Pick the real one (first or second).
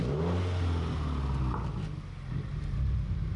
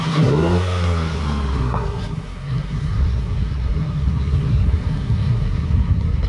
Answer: first